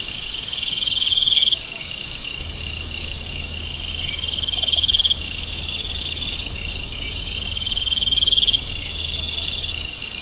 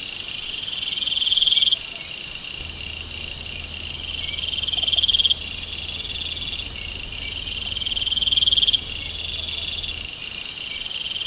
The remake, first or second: first